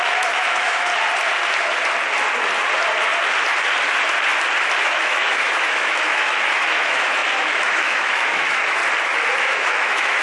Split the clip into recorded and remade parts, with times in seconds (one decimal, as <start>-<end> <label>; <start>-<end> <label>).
0.0-0.9 remade; 0.9-4.8 recorded; 4.8-8.8 remade; 8.8-9.4 recorded; 9.4-10.2 remade